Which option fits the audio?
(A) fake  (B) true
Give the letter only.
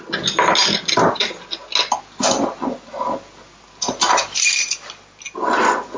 B